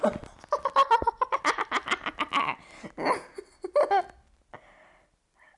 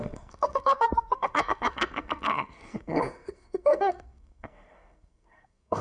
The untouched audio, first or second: first